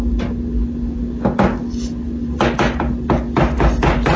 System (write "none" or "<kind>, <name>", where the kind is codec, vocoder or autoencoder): none